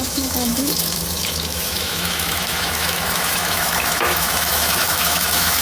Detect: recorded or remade remade